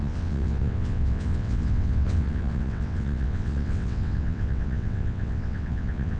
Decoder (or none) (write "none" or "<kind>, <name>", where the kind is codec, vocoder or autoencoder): vocoder, WaveNeXt